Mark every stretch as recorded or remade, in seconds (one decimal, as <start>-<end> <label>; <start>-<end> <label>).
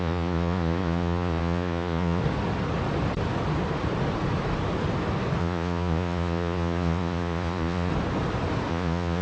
0.0-2.2 remade; 2.2-5.4 recorded; 5.4-7.9 remade; 7.9-8.7 recorded; 8.7-9.2 remade